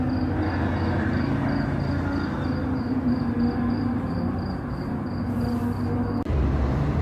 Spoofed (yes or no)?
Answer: no